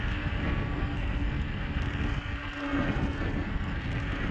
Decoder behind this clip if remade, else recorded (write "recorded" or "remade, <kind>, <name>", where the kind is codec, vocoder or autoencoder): remade, codec, SNAC